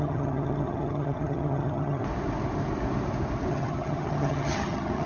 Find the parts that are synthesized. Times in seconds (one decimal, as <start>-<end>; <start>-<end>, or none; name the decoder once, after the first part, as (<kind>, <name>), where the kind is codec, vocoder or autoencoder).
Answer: 0.0-2.0 (vocoder, HiFi-GAN); 3.5-5.1